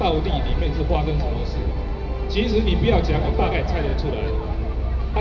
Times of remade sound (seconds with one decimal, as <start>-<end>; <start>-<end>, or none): none